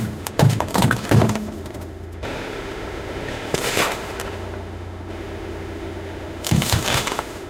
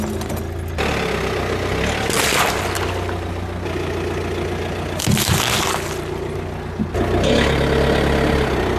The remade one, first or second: first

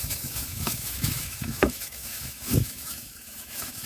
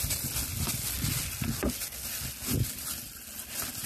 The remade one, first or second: first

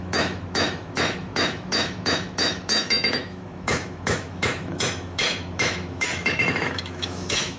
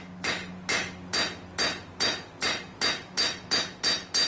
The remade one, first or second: first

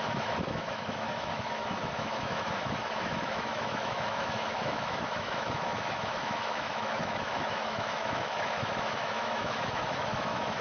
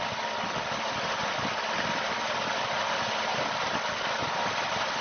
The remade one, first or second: first